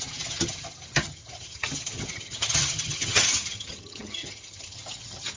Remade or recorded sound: remade